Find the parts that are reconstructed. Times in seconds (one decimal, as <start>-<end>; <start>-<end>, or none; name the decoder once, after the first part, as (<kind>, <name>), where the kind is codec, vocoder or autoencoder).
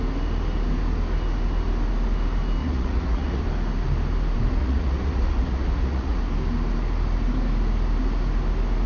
2.6-3.4 (vocoder, Vocos); 4.6-6.2